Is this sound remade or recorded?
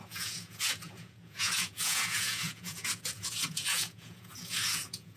remade